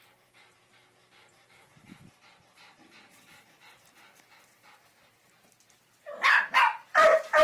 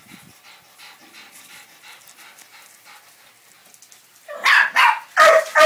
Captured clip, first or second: second